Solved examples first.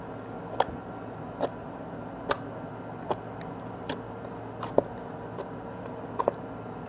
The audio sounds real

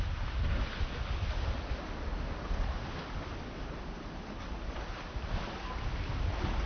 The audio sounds real